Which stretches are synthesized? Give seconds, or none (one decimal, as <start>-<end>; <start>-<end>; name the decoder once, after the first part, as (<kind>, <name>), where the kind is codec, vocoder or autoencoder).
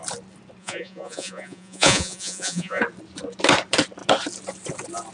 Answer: 0.6-2.8 (vocoder, Vocos)